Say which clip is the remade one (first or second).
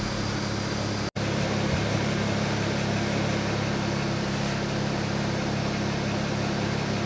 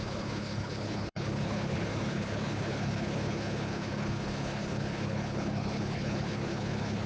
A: second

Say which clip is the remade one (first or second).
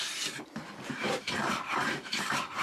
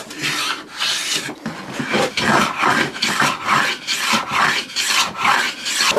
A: first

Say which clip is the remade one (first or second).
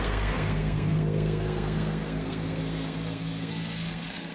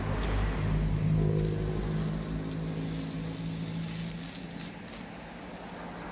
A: first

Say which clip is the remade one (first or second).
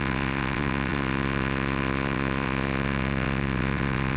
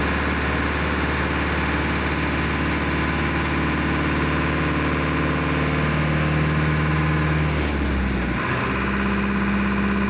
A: first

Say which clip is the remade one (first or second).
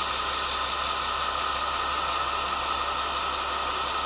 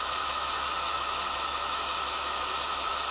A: second